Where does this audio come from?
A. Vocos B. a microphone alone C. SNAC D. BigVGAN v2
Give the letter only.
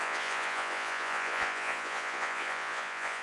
A